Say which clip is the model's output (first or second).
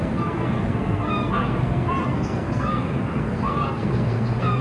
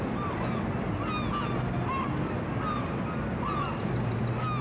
first